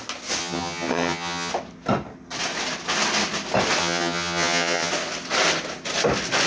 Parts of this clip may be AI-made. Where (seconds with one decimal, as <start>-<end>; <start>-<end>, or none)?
0.4-1.5; 3.8-4.9